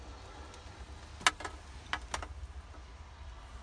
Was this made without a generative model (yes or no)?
yes